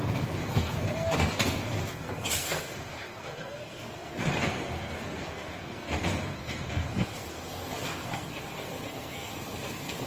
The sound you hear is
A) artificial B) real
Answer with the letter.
A